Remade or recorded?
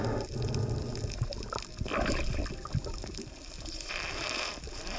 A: remade